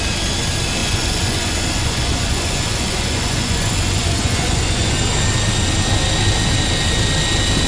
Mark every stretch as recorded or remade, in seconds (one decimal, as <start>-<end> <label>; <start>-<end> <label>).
0.0-0.8 recorded; 0.8-4.9 remade; 4.9-7.7 recorded